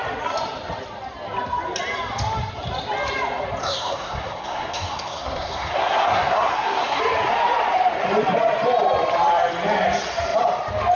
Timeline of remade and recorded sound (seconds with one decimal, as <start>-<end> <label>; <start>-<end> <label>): 0.0-3.6 recorded; 3.6-7.0 remade; 7.0-11.0 recorded